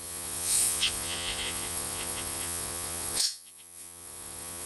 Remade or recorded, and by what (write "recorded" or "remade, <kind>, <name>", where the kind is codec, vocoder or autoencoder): remade, vocoder, Vocos